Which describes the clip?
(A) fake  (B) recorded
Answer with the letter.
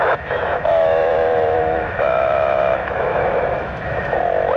A